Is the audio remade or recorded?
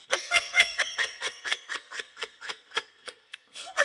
remade